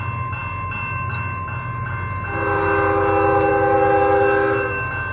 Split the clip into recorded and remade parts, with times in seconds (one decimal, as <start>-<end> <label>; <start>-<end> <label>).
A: 0.0-5.1 recorded